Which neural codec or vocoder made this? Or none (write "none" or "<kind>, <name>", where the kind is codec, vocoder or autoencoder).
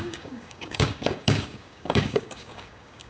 codec, DAC